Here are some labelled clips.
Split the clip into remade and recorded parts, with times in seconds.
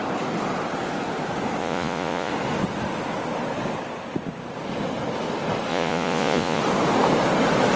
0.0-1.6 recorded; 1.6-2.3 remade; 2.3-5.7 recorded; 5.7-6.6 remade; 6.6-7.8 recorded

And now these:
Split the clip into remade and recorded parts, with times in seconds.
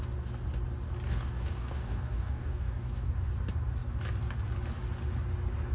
0.0-1.1 recorded; 1.1-3.1 remade; 3.1-5.7 recorded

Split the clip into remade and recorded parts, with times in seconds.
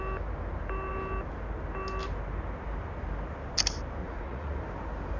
0.0-4.0 recorded; 4.0-4.6 remade; 4.6-5.2 recorded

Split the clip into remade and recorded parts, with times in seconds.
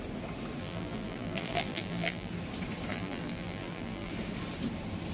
0.0-0.6 recorded; 0.6-2.3 remade; 2.3-2.9 recorded; 2.9-4.1 remade; 4.1-5.1 recorded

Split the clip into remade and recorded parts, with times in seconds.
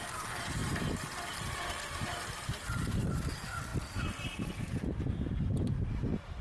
0.0-6.4 remade